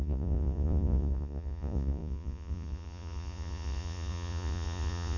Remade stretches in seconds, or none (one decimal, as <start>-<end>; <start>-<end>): 0.0-5.2